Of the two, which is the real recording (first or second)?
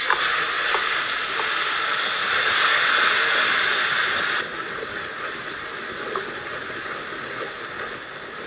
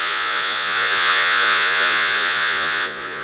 first